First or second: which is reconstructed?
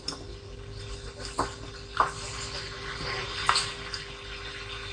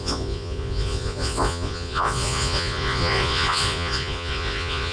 second